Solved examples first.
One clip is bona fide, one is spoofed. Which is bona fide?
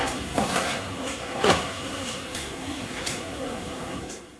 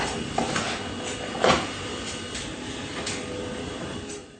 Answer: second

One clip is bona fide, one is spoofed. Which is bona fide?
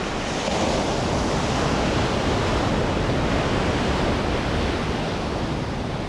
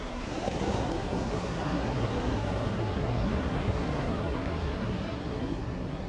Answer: first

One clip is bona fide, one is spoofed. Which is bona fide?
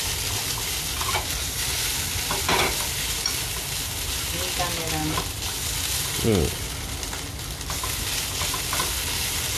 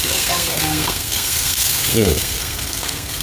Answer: first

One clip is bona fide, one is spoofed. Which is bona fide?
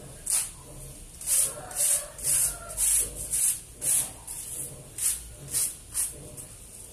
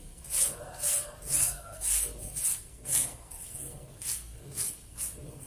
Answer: first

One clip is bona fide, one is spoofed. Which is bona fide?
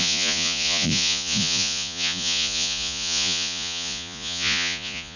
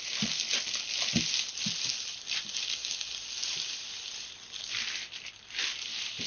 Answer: second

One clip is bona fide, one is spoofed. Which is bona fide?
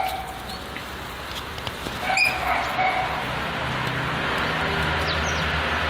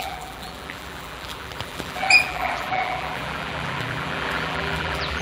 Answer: first